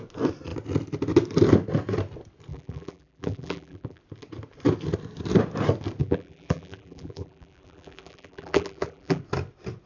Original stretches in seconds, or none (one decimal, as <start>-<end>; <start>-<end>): 0.0-2.5; 4.0-6.0; 9.2-9.9